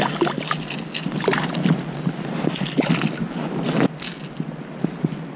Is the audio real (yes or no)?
yes